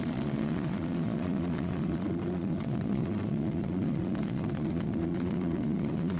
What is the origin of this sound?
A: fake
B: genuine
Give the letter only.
A